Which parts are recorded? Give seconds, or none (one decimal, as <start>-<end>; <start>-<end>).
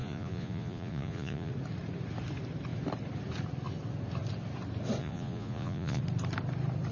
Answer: 1.5-5.0; 6.0-6.9